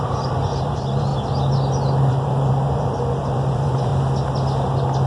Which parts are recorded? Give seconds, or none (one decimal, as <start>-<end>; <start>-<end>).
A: 1.1-2.1; 3.9-5.1